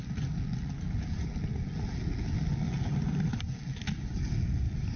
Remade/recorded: recorded